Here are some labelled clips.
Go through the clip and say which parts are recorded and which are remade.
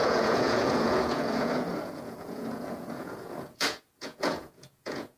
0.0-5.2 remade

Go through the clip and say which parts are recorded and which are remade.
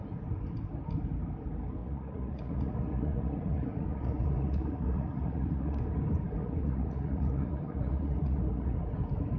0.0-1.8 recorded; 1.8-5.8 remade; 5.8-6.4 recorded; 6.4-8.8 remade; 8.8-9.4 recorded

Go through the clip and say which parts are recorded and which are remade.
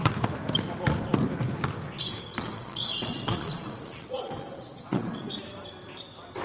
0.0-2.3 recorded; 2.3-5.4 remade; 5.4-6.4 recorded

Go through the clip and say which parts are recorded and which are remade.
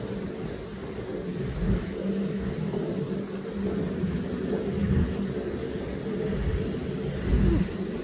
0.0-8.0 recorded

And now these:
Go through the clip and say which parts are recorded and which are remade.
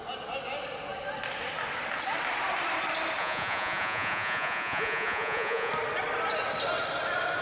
0.0-3.2 recorded; 3.2-5.7 remade; 5.7-7.4 recorded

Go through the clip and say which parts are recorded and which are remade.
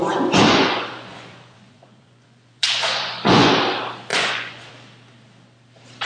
0.0-3.5 remade; 3.5-4.1 recorded; 4.1-4.7 remade; 4.7-6.0 recorded